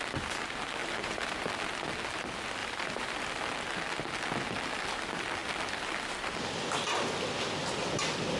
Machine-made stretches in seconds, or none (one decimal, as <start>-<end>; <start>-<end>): 0.8-1.4; 2.6-3.1